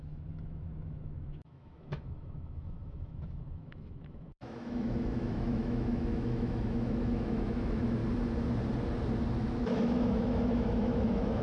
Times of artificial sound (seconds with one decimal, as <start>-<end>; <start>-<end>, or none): 0.0-8.0; 9.4-11.4